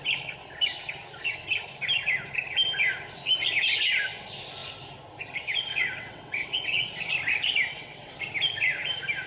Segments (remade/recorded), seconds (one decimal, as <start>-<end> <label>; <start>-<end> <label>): 0.0-5.7 recorded; 5.7-6.9 remade; 6.9-7.7 recorded; 7.7-8.2 remade; 8.2-9.3 recorded